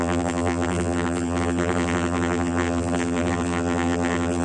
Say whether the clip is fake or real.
fake